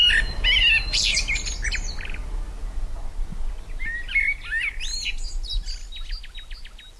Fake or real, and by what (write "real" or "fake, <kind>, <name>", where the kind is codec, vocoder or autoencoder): real